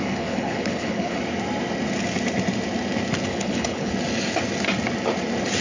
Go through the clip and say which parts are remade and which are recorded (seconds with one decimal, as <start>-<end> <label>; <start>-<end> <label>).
0.0-1.2 remade; 1.2-3.3 recorded; 3.3-3.9 remade; 3.9-5.6 recorded